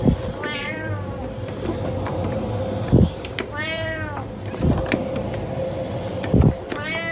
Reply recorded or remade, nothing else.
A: remade